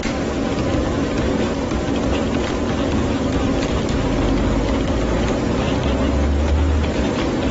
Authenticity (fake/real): real